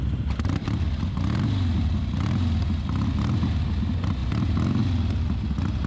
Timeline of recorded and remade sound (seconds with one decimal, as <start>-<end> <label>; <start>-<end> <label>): 0.0-5.9 recorded